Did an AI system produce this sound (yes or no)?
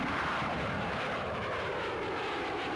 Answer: yes